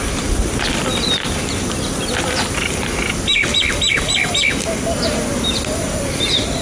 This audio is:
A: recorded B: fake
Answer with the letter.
A